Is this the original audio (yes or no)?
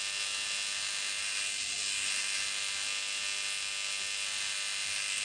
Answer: yes